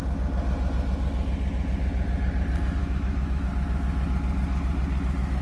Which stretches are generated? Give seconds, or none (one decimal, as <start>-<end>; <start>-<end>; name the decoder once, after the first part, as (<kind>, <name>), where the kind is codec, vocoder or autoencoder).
2.8-3.5 (autoencoder, DAC-VAE)